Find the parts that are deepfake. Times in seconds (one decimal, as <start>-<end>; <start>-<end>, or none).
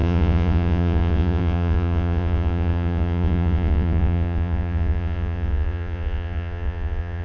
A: 0.0-7.2